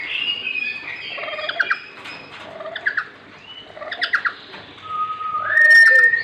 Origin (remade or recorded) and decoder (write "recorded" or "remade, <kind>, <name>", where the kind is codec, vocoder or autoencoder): recorded